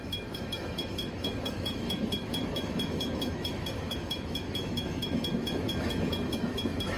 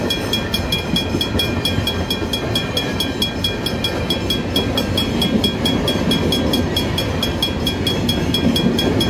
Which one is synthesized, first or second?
first